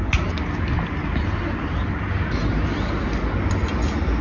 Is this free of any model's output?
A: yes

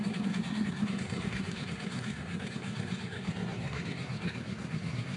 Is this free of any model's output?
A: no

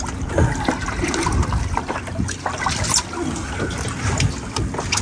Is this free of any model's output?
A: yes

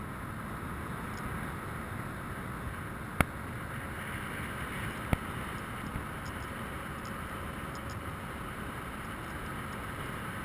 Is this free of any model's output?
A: yes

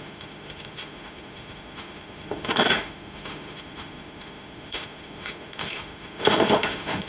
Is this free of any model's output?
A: no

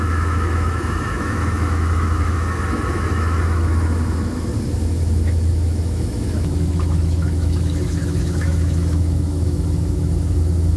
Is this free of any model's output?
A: no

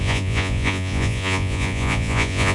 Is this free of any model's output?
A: no